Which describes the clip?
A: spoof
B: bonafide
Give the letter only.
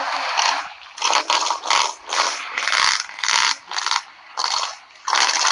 B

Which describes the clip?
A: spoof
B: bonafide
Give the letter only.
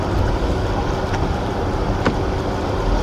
B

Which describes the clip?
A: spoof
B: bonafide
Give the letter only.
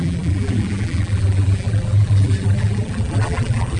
A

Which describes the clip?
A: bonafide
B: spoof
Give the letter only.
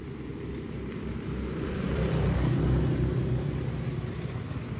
B